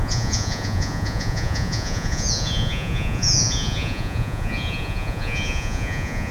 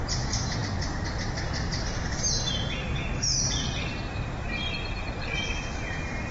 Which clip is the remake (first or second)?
first